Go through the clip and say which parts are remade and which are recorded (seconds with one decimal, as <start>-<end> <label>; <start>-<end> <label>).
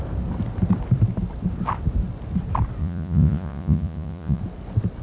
0.0-2.8 recorded; 2.8-4.4 remade; 4.4-5.0 recorded